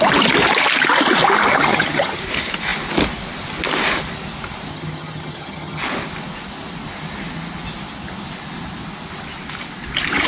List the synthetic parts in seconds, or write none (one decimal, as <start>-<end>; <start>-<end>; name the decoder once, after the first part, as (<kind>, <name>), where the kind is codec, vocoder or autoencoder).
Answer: 1.5-2.2 (vocoder, HiFi-GAN); 4.7-5.8